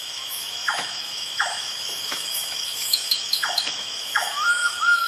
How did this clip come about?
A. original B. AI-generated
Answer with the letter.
B